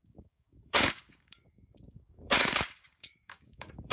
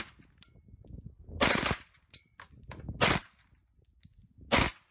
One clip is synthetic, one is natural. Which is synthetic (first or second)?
first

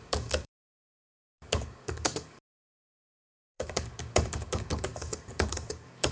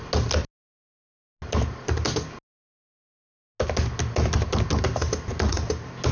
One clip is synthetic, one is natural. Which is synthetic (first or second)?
first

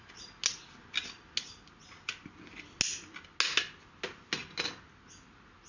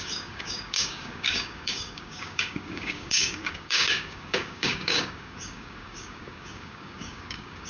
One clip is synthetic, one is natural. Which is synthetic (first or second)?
second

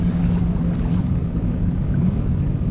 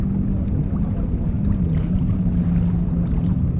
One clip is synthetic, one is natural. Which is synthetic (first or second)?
first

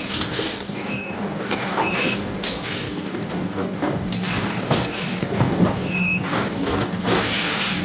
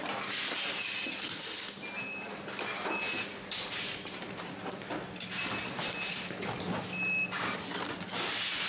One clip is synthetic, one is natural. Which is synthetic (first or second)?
first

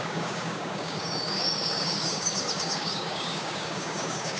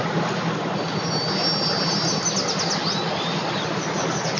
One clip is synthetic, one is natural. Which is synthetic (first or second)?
first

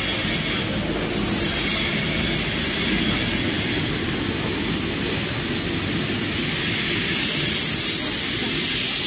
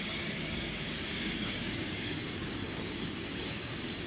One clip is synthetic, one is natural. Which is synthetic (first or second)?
second